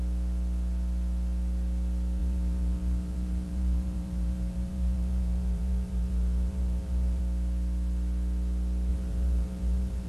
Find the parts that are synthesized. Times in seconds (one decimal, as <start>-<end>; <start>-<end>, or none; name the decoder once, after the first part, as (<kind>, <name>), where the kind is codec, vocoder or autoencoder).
2.2-7.2 (vocoder, BigVGAN v2); 8.9-10.1